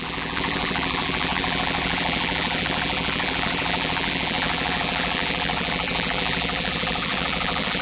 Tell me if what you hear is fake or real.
fake